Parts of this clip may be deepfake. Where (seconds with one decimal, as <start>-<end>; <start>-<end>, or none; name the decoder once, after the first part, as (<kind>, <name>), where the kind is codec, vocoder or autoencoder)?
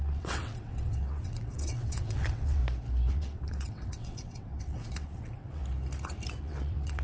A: 0.0-2.6 (vocoder, WaveNeXt); 3.1-5.6; 6.4-7.0